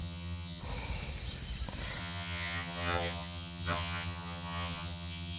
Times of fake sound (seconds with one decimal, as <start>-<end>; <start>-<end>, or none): 0.0-0.6; 2.0-5.4